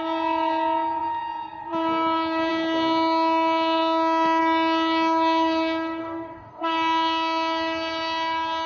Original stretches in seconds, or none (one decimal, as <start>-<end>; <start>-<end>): 0.0-6.0; 6.7-8.7